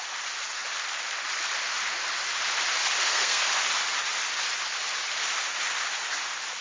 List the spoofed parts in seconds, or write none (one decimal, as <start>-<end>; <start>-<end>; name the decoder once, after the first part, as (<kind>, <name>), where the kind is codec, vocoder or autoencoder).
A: 3.0-3.5 (codec, SNAC)